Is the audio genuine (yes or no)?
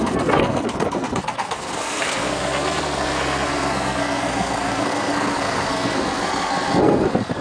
no